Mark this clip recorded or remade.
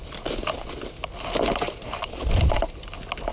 recorded